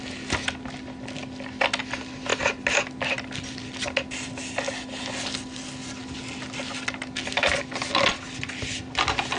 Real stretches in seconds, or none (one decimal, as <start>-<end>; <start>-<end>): 0.0-9.4